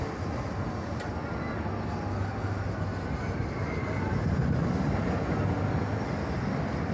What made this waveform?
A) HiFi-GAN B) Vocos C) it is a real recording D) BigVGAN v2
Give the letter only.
C